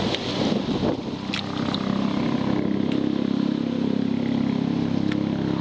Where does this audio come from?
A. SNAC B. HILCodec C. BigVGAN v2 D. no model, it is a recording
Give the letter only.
D